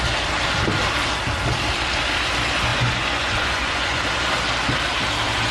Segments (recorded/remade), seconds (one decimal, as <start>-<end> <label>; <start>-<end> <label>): 0.0-2.7 recorded; 2.7-4.0 remade; 4.0-5.5 recorded